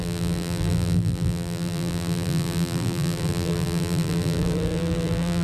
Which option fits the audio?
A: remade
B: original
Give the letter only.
A